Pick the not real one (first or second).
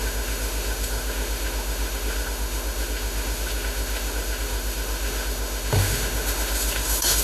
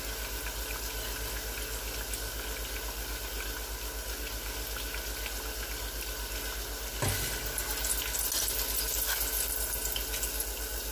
first